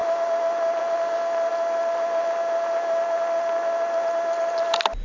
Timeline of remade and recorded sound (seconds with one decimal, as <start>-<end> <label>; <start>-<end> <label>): 0.0-5.0 recorded